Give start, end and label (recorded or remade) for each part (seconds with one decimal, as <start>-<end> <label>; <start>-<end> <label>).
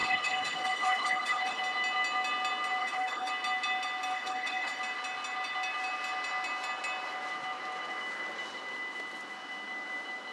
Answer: 0.0-1.6 remade; 1.6-2.8 recorded; 2.8-3.3 remade; 3.3-4.1 recorded; 4.1-4.8 remade; 4.8-10.3 recorded